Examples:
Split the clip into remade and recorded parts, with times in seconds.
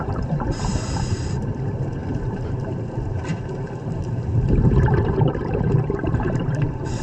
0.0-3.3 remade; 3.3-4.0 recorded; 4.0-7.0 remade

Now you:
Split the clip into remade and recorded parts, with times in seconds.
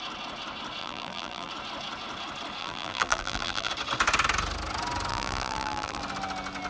0.0-0.8 recorded; 0.8-1.5 remade; 1.5-2.6 recorded; 2.6-3.7 remade; 3.7-5.1 recorded; 5.1-6.0 remade; 6.0-6.7 recorded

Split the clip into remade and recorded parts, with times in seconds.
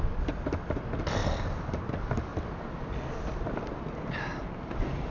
0.0-5.1 recorded